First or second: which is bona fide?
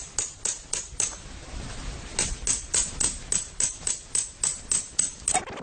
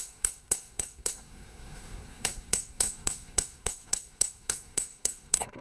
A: first